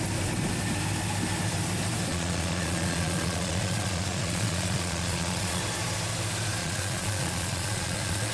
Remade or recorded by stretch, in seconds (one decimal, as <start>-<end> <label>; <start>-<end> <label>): 0.0-2.1 recorded; 2.1-5.6 remade; 5.6-6.6 recorded; 6.6-8.3 remade